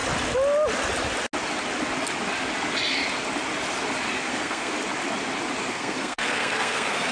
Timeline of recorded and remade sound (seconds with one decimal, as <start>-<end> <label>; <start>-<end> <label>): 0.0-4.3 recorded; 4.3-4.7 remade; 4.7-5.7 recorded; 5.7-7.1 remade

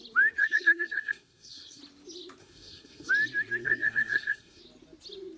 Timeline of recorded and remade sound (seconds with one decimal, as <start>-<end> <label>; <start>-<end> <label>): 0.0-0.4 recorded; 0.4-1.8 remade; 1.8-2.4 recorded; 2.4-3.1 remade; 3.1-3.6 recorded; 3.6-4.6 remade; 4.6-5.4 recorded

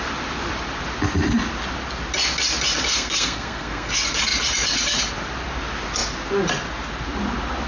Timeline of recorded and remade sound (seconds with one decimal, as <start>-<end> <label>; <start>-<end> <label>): 0.0-2.9 recorded; 2.9-3.9 remade; 3.9-7.7 recorded

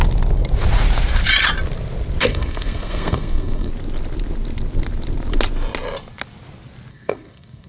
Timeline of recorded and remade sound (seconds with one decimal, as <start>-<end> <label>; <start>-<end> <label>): 0.0-2.2 recorded; 2.2-3.7 remade; 3.7-6.9 recorded; 6.9-7.7 remade

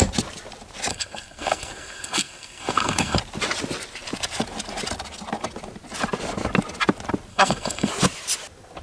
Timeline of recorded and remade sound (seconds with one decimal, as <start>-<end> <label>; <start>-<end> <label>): 0.0-0.9 recorded; 0.9-3.2 remade; 3.2-7.3 recorded; 7.3-7.9 remade; 7.9-8.8 recorded